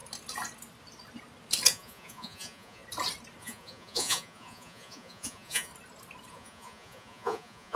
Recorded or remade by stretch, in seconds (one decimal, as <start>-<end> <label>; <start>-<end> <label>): 0.0-1.7 recorded; 1.7-2.8 remade; 2.8-3.4 recorded; 3.4-5.7 remade; 5.7-6.3 recorded; 6.3-7.8 remade